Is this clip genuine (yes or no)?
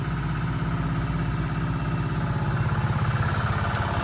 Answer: yes